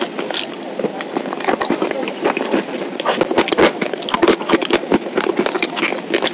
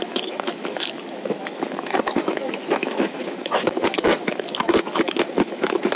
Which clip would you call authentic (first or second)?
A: first